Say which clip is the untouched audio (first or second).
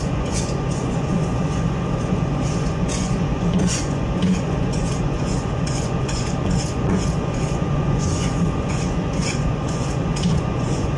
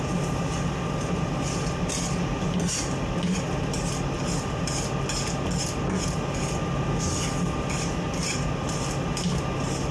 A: second